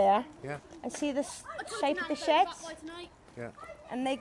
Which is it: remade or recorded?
recorded